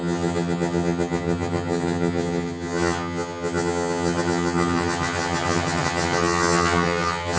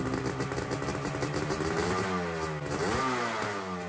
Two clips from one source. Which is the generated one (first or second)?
first